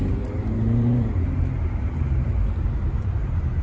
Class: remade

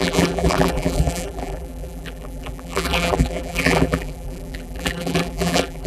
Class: remade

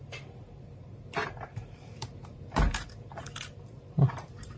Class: remade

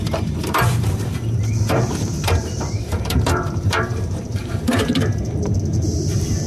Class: remade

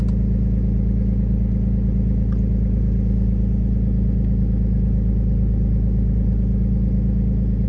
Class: recorded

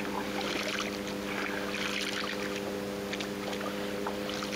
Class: recorded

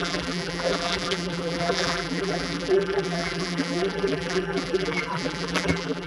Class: remade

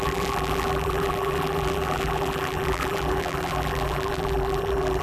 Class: remade